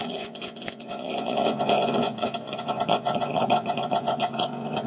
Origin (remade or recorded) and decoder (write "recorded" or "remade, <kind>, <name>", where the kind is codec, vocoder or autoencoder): remade, vocoder, Vocos